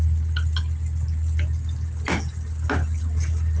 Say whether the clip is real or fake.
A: real